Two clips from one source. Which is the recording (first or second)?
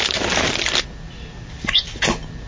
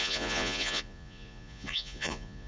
first